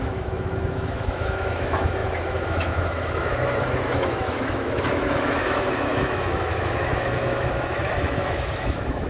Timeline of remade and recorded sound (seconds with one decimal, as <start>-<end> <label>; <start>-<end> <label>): 0.0-9.1 remade